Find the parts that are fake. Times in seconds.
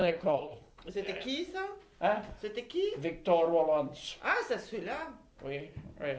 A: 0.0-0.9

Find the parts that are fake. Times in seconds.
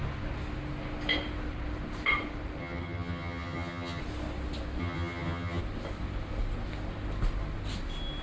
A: 2.6-4.0; 4.8-5.6